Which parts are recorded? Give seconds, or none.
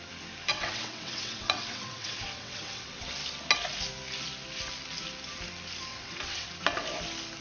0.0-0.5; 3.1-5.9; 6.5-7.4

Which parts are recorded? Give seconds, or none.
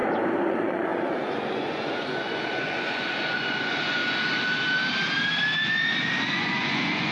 0.0-0.5; 4.0-6.3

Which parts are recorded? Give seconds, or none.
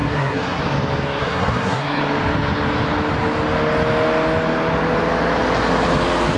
0.6-1.2; 2.0-6.4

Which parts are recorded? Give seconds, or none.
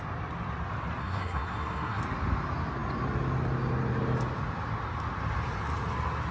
0.0-1.0; 2.0-6.3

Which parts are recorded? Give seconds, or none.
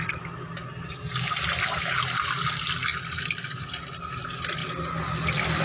0.0-5.6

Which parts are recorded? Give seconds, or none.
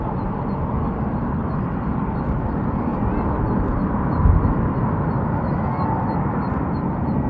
0.0-7.3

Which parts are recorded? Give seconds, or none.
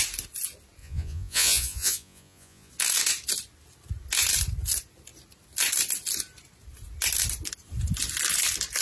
0.0-0.8; 2.7-8.8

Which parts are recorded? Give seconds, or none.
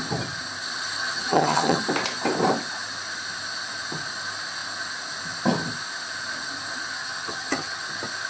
0.0-1.0; 1.8-7.0; 7.8-8.3